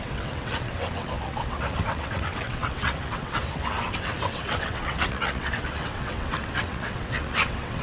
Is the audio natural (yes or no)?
no